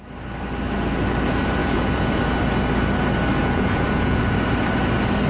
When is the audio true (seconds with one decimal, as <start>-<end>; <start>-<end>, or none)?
0.0-1.6; 2.2-3.4; 4.2-5.3